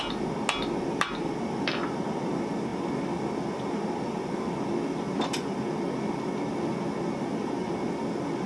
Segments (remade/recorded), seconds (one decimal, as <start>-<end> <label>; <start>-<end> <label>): 0.0-8.5 recorded